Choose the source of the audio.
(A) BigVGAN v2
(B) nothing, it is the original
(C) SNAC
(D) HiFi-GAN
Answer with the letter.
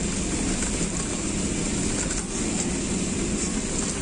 B